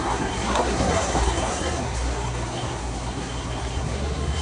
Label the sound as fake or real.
fake